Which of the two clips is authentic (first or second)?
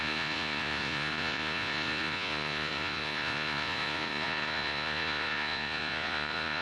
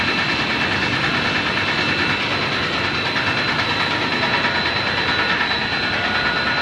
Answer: second